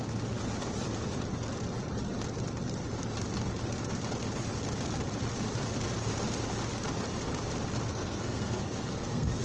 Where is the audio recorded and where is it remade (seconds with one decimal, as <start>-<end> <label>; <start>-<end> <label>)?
0.0-7.9 recorded; 7.9-9.4 remade